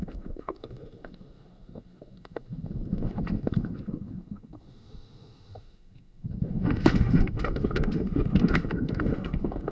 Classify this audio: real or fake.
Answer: fake